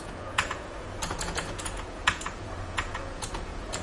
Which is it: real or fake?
fake